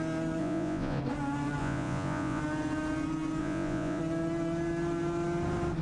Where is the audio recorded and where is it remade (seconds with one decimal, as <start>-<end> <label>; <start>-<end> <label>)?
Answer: 0.0-0.4 recorded; 0.4-1.0 remade; 1.0-1.6 recorded; 1.6-2.4 remade; 2.4-3.4 recorded; 3.4-4.0 remade; 4.0-5.8 recorded